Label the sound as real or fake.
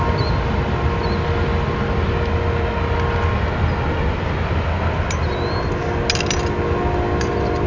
real